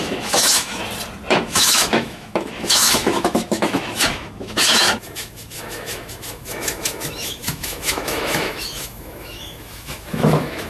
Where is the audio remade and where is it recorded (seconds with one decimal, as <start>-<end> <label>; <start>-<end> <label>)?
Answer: 0.0-0.8 remade; 0.8-1.3 recorded; 1.3-10.7 remade